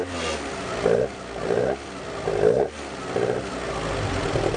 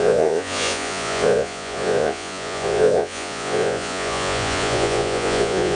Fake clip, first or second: second